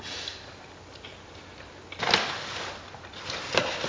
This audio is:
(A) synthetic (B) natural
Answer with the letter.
B